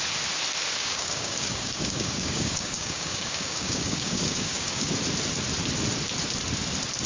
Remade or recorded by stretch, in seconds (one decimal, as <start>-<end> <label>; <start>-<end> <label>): 0.0-0.8 recorded; 0.8-4.9 remade; 4.9-7.1 recorded